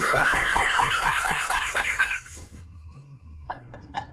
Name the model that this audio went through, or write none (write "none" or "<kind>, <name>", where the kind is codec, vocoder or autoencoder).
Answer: codec, SNAC